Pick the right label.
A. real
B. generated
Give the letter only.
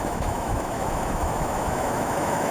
B